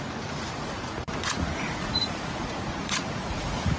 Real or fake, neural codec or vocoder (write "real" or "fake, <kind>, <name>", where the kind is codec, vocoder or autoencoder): fake, vocoder, Vocos